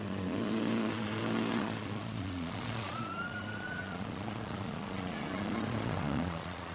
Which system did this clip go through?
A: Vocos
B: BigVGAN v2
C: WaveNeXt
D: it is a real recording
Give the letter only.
A